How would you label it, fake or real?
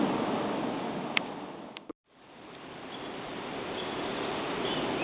real